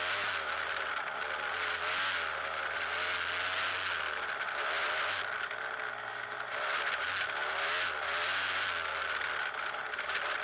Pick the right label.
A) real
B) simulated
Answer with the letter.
A